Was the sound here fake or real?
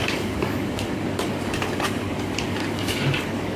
fake